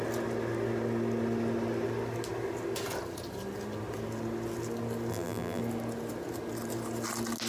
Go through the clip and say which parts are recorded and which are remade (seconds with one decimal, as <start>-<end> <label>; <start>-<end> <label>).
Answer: 0.0-5.1 recorded; 5.1-5.6 remade; 5.6-7.5 recorded